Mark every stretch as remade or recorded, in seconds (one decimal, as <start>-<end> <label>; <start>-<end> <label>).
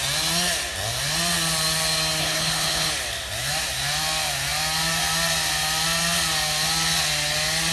0.0-2.2 recorded; 2.2-2.9 remade; 2.9-7.7 recorded